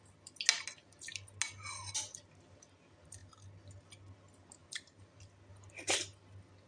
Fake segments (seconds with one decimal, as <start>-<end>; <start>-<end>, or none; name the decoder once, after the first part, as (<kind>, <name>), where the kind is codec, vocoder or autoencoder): 4.6-5.2 (vocoder, BigVGAN v2)